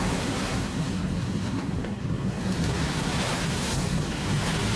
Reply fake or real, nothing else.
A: fake